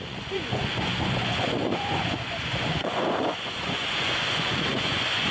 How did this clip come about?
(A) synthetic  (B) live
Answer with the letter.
A